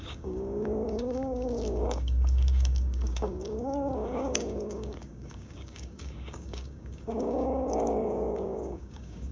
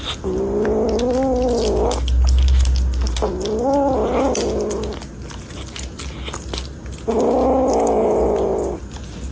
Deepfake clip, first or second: first